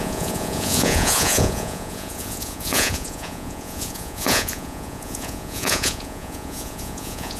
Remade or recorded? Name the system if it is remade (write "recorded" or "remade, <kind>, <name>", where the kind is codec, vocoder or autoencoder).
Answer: remade, vocoder, Vocos